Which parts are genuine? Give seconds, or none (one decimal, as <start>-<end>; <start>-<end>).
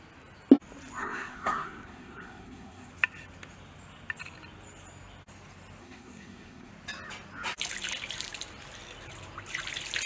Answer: 0.0-1.0; 2.9-5.8; 6.7-10.1